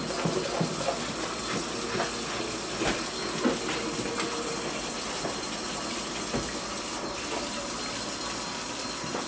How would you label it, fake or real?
real